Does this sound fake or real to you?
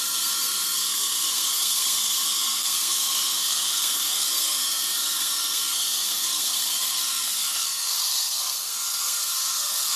fake